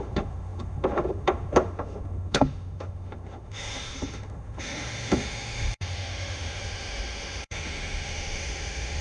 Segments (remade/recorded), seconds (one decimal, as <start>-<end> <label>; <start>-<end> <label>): 0.0-9.0 remade